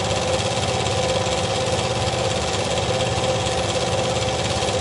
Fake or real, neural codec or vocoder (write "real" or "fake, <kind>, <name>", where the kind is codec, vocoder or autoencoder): real